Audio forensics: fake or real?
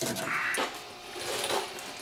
real